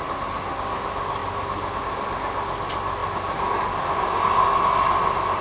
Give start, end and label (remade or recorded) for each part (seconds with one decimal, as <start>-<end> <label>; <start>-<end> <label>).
0.0-5.4 recorded